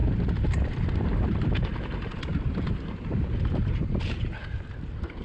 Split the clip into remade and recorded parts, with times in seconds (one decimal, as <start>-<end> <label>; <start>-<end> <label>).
0.0-1.1 recorded; 1.1-4.2 remade; 4.2-5.2 recorded